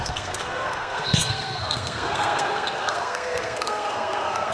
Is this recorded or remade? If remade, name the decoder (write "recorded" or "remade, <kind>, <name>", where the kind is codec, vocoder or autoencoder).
remade, codec, SNAC